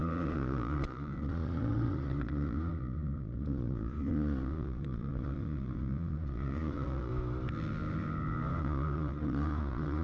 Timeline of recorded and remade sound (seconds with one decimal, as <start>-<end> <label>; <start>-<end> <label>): 0.0-7.1 remade; 7.1-8.6 recorded; 8.6-10.0 remade